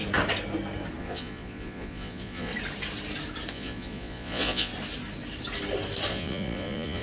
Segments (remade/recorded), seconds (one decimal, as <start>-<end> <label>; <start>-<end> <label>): 0.0-1.0 recorded; 1.0-2.5 remade; 2.5-3.5 recorded; 3.5-4.7 remade; 4.7-6.1 recorded; 6.1-7.0 remade